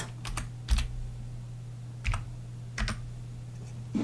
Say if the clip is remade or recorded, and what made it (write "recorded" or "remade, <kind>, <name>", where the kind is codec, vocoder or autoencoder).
recorded